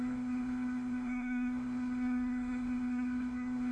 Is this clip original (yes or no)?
no